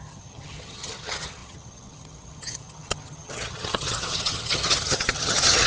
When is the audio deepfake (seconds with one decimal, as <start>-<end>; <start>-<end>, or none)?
0.0-5.7